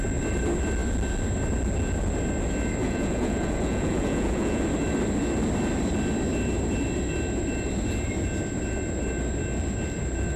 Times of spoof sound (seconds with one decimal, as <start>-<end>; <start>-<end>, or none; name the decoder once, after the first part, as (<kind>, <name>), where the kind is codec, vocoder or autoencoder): 2.8-4.6 (vocoder, Vocos)